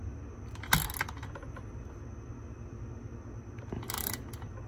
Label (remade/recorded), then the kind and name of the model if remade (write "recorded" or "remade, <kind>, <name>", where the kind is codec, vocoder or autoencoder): recorded